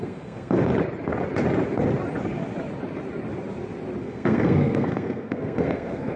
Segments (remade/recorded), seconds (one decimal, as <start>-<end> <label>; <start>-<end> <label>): 0.0-0.7 remade; 0.7-4.0 recorded; 4.0-6.2 remade